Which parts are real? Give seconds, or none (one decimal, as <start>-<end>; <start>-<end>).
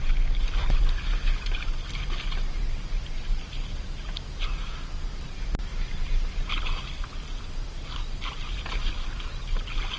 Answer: 0.0-10.0